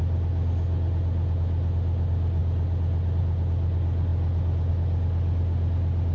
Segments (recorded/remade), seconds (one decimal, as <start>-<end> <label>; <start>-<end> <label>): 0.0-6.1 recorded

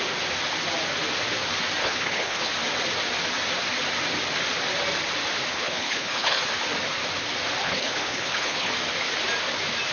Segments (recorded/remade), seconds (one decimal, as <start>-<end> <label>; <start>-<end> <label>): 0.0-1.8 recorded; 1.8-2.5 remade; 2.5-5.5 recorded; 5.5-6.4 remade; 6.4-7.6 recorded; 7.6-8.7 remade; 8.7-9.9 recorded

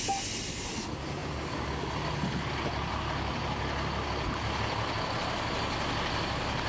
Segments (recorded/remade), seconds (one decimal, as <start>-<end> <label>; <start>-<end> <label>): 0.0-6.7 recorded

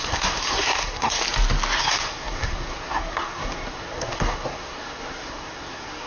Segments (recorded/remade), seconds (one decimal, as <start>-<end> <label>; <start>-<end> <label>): 0.0-1.2 remade; 1.2-1.8 recorded; 1.8-6.1 remade

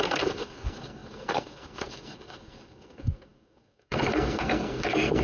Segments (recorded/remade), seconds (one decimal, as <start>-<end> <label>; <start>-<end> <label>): 0.0-5.2 remade

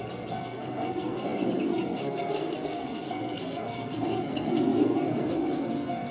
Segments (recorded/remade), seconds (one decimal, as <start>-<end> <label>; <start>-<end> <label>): 0.0-6.1 remade

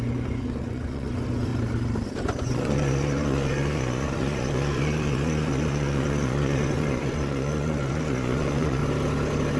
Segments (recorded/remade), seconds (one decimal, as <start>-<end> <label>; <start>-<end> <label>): 0.0-1.5 remade; 1.5-2.4 recorded; 2.4-8.8 remade; 8.8-9.6 recorded

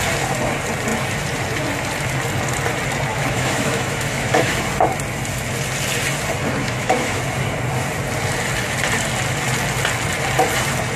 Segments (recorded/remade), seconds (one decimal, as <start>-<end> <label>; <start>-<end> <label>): 0.0-3.1 recorded; 3.1-4.6 remade; 4.6-6.6 recorded; 6.6-7.2 remade; 7.2-11.0 recorded